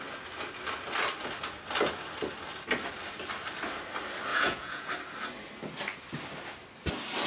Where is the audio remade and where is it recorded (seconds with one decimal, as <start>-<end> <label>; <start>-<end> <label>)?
0.0-4.3 recorded; 4.3-4.9 remade; 4.9-7.3 recorded